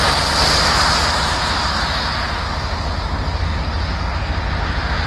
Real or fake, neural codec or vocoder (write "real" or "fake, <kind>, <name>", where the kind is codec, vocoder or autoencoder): real